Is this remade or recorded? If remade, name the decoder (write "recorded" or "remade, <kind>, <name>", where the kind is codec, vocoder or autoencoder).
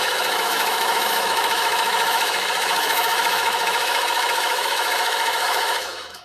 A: remade, autoencoder, DAC-VAE